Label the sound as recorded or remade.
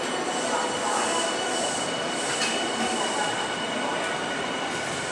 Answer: recorded